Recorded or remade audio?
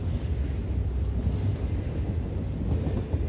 recorded